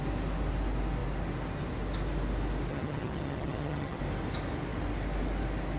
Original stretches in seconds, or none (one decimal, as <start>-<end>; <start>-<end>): 0.0-2.7; 4.0-5.8